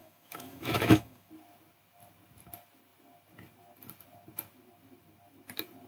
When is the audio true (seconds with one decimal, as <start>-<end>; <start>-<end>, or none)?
1.3-5.9